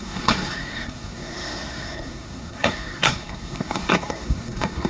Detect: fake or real fake